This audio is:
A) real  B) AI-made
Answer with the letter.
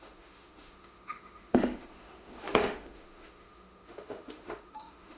B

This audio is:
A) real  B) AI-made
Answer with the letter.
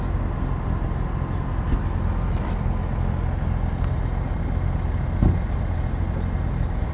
A